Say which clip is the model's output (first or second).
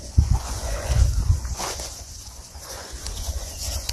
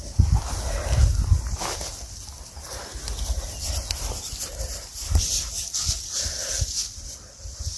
first